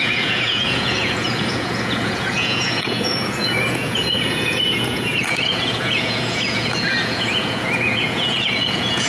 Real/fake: fake